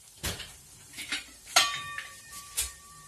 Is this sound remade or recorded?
remade